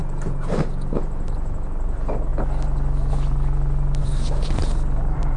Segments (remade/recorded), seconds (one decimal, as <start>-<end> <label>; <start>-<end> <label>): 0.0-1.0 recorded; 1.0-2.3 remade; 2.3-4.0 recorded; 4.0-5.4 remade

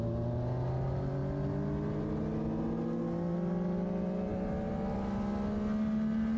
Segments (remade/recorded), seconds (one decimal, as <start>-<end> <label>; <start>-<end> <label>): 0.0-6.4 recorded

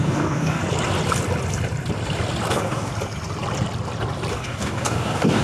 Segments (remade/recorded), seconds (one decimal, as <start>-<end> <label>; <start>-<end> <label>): 0.0-0.6 remade; 0.6-2.5 recorded; 2.5-2.9 remade; 2.9-4.3 recorded; 4.3-5.4 remade

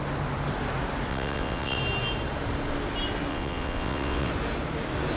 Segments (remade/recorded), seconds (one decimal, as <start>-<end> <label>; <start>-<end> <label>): 0.0-1.1 recorded; 1.1-1.8 remade; 1.8-3.3 recorded; 3.3-4.3 remade; 4.3-5.2 recorded

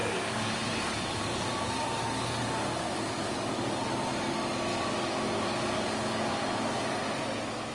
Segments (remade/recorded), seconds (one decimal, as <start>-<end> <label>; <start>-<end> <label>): 0.0-3.9 remade; 3.9-4.7 recorded; 4.7-7.0 remade; 7.0-7.7 recorded

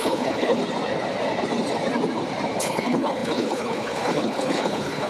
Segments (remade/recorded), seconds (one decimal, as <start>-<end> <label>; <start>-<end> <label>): 0.0-0.6 remade; 0.6-2.6 recorded; 2.6-5.1 remade